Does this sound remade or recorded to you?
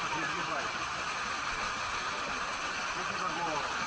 recorded